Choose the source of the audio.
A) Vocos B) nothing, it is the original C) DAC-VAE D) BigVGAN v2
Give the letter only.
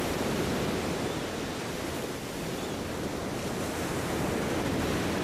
B